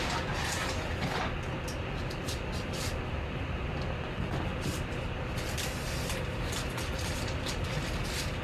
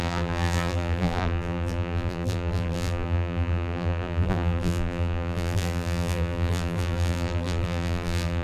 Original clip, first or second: first